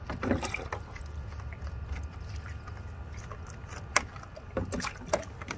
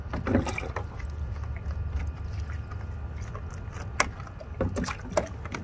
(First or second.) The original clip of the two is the second